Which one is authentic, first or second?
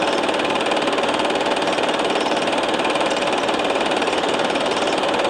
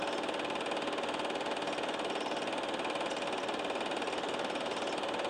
second